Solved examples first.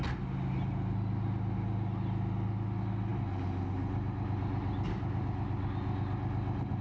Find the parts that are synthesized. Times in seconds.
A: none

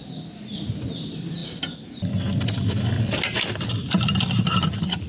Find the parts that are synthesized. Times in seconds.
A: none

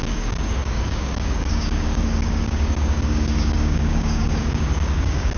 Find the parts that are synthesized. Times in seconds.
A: 0.0-5.4 (codec, DAC)

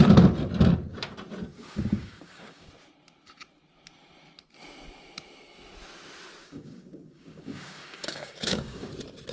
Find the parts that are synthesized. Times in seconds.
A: 1.5-2.7 (codec, DAC); 6.4-8.9